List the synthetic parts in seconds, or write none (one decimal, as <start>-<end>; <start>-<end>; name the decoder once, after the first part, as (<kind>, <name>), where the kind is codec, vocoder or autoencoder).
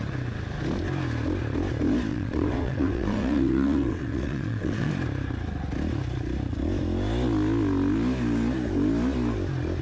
2.1-4.9 (vocoder, WaveNeXt)